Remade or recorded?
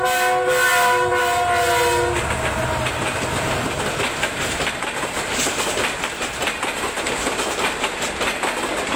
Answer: recorded